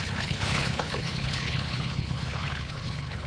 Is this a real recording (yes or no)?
no